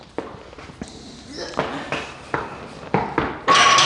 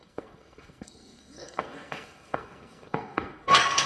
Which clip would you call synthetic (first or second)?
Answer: second